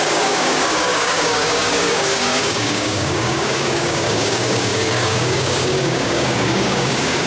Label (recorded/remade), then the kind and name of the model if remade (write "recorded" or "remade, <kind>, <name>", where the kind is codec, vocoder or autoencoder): remade, codec, DAC